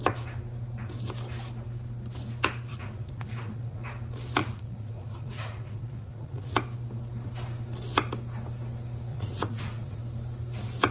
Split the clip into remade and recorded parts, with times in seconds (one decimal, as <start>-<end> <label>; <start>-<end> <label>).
0.0-2.7 recorded; 2.7-3.8 remade; 3.8-4.4 recorded; 4.4-6.5 remade; 6.5-9.1 recorded; 9.1-10.0 remade; 10.0-10.9 recorded